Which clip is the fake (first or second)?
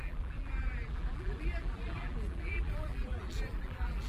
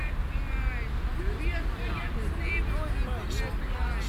first